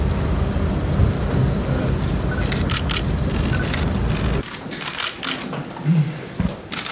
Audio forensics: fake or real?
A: real